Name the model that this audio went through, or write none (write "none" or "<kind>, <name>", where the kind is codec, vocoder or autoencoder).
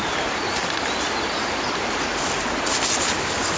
none